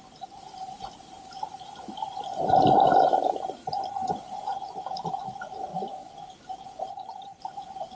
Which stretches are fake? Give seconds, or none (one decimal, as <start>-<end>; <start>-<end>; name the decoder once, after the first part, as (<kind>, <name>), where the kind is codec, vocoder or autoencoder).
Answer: 3.6-4.1 (vocoder, HiFi-GAN); 6.9-7.4